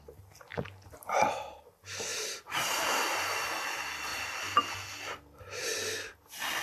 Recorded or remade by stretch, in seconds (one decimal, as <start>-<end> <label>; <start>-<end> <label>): 0.0-2.1 recorded; 2.1-3.4 remade; 3.4-6.6 recorded

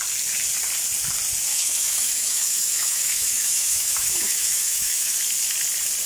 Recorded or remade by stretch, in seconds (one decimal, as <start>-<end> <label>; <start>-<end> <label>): 0.0-1.5 recorded; 1.5-5.2 remade; 5.2-6.1 recorded

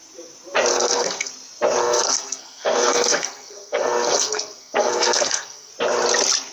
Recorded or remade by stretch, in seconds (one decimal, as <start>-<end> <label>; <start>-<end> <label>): 0.0-0.7 recorded; 0.7-1.3 remade; 1.3-1.8 recorded; 1.8-5.7 remade; 5.7-6.5 recorded

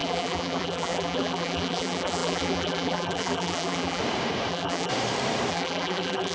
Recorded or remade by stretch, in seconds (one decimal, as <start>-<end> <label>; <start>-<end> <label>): 0.0-4.0 remade; 4.0-4.5 recorded; 4.5-4.9 remade; 4.9-5.5 recorded; 5.5-6.3 remade

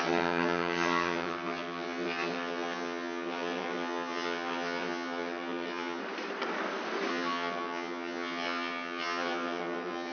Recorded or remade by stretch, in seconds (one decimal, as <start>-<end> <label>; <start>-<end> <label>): 0.0-6.0 remade; 6.0-7.1 recorded; 7.1-10.1 remade